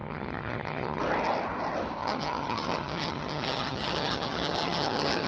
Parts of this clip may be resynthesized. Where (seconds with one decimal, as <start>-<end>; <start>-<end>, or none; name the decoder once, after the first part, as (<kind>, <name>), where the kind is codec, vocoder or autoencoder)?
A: 0.0-1.0 (vocoder, HiFi-GAN); 2.0-5.3